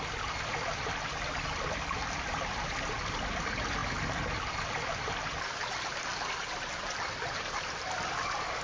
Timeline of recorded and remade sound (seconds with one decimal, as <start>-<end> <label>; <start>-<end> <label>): 0.0-8.6 recorded